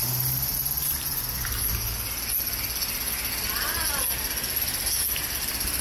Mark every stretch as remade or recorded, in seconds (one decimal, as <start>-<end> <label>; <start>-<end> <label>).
0.0-5.8 recorded